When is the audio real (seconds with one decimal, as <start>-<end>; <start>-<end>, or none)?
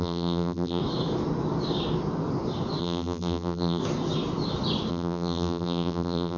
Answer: 0.8-2.8; 3.8-4.9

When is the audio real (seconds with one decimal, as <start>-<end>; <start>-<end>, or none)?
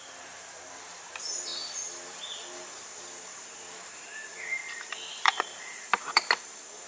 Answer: 4.6-5.2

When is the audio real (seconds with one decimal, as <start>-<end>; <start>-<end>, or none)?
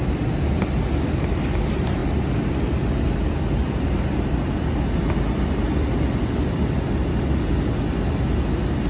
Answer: 0.0-8.9